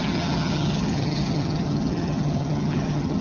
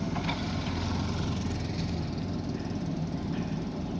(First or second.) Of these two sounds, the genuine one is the second